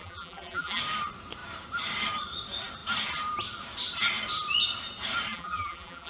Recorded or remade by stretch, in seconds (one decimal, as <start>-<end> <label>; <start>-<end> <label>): 0.0-0.8 remade; 0.8-5.3 recorded; 5.3-6.1 remade